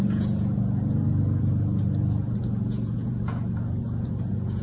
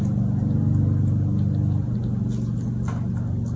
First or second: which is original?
second